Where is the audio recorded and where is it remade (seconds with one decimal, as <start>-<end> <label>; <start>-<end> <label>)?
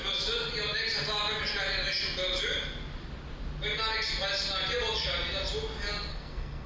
0.0-6.1 recorded; 6.1-6.7 remade